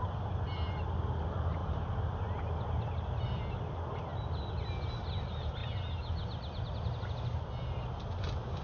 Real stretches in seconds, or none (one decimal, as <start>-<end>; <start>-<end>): 0.0-8.6